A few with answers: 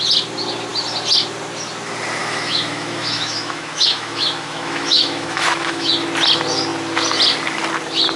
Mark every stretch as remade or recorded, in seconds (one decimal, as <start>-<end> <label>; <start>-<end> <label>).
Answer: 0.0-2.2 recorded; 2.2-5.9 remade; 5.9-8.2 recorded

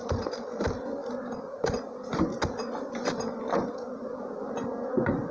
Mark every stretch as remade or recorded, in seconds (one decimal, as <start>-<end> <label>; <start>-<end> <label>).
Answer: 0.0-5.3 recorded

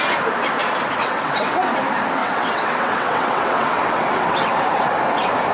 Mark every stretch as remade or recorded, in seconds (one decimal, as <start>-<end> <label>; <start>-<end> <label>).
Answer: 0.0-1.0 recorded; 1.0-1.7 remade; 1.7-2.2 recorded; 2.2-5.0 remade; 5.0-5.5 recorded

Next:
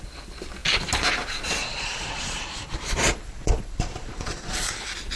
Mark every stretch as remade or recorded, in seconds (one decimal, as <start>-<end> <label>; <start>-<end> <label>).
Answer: 0.0-1.6 recorded; 1.6-4.7 remade; 4.7-5.2 recorded

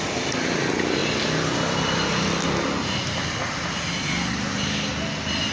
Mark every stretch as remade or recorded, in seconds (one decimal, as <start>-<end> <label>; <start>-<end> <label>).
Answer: 0.0-5.5 recorded

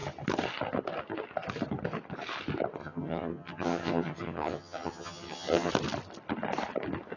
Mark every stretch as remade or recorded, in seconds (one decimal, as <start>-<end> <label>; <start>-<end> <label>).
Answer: 0.0-2.8 recorded; 2.8-5.7 remade; 5.7-7.2 recorded

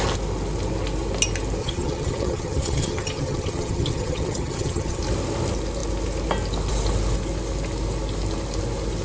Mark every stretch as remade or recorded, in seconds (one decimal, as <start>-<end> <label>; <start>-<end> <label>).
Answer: 0.0-1.6 recorded; 1.6-5.0 remade; 5.0-9.0 recorded